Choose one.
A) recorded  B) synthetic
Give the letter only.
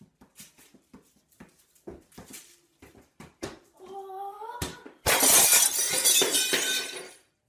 A